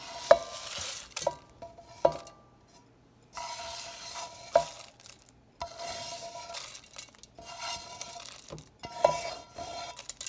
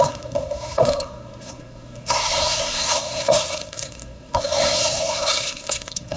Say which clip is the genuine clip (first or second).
first